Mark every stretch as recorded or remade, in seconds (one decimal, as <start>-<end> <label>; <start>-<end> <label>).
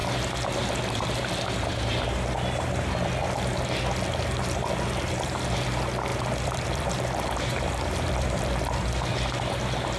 0.0-6.1 recorded; 6.1-8.6 remade; 8.6-10.0 recorded